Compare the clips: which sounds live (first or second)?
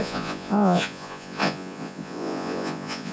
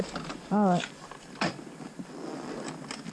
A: second